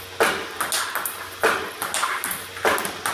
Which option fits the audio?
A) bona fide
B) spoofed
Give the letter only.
A